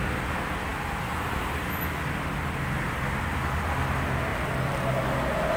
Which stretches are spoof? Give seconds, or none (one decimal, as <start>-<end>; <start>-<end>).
4.3-5.0